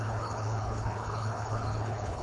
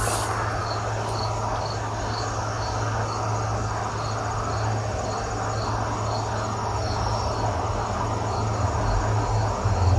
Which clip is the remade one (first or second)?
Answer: first